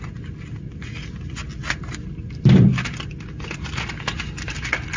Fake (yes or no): no